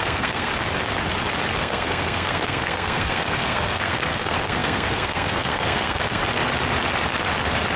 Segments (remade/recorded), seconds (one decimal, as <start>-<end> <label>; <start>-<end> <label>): 0.0-0.5 remade; 0.5-1.6 recorded; 1.6-6.2 remade; 6.2-7.8 recorded